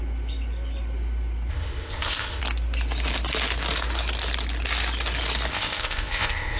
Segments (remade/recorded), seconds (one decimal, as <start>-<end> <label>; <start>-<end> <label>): 0.0-1.5 recorded; 1.5-2.4 remade; 2.4-5.5 recorded; 5.5-6.6 remade